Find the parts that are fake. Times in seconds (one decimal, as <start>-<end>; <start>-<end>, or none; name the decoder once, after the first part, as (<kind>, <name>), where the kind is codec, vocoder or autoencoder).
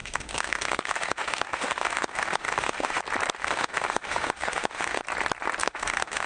0.0-3.0 (autoencoder, DAC-VAE); 3.4-5.0; 5.6-6.3